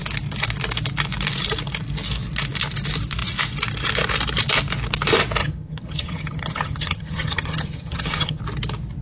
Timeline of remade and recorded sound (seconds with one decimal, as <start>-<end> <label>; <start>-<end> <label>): 0.0-5.4 recorded; 5.4-8.4 remade; 8.4-9.0 recorded